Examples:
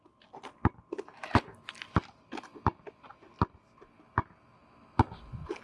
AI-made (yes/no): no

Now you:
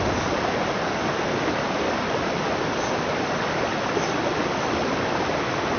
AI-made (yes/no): no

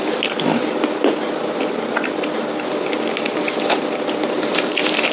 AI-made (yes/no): no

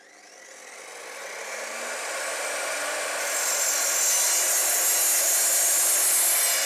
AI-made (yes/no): no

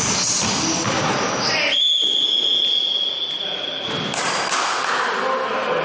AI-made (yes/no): no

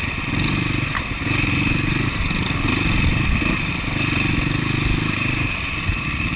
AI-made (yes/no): no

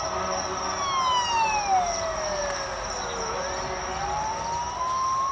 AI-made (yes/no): no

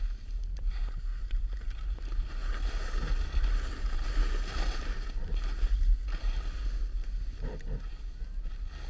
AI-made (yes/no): no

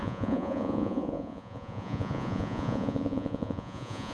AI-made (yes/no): yes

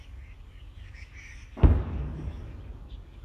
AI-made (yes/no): yes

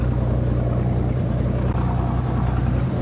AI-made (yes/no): no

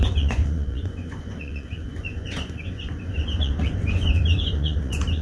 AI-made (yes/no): yes